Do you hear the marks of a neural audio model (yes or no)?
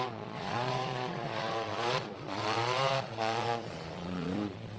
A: yes